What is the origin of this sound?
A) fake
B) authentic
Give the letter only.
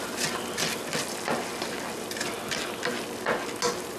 B